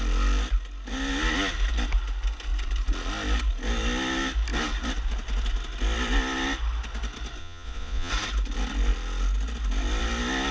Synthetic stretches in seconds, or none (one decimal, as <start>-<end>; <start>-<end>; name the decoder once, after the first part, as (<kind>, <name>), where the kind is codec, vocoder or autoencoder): 7.4-8.1 (vocoder, Vocos)